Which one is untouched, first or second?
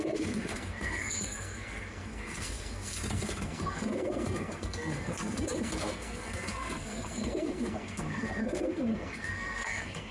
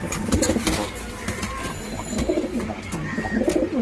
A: second